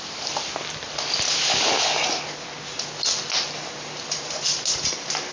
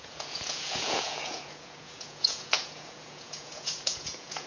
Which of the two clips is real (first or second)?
first